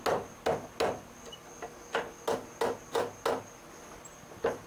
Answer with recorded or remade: recorded